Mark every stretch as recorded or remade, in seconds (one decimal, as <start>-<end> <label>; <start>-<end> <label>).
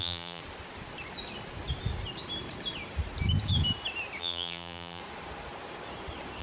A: 0.0-0.4 remade; 0.4-4.2 recorded; 4.2-5.0 remade; 5.0-6.4 recorded